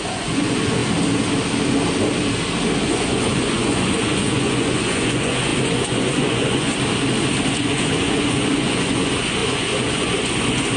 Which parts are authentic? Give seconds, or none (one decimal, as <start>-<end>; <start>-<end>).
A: 0.8-2.8; 6.7-7.5